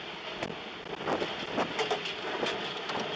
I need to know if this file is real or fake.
real